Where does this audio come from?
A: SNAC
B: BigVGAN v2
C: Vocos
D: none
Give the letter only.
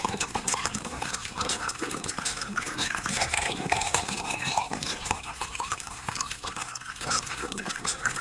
A